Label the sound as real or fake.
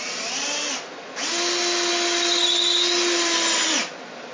real